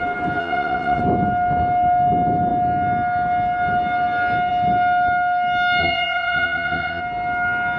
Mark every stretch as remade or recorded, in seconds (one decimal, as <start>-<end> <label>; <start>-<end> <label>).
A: 0.0-0.4 recorded; 0.4-1.0 remade; 1.0-5.8 recorded; 5.8-7.0 remade; 7.0-7.8 recorded